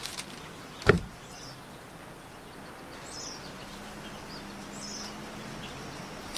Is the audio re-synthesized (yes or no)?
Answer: no